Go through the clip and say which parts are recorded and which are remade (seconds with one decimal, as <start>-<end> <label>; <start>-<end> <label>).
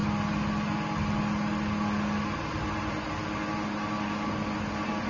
0.0-5.1 recorded